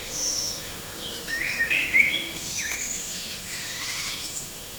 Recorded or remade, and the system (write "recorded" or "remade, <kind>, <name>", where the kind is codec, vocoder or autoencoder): remade, autoencoder, DAC-VAE